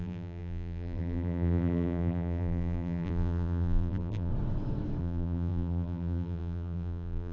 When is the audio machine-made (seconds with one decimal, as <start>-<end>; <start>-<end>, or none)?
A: 0.0-4.3; 5.0-7.3